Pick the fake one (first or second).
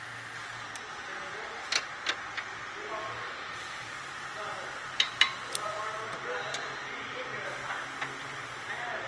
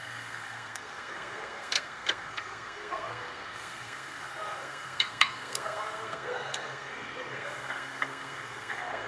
second